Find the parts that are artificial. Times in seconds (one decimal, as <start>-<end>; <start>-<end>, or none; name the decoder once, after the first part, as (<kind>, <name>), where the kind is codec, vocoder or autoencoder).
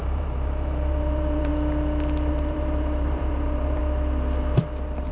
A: 0.0-1.5 (vocoder, BigVGAN v2); 2.3-3.8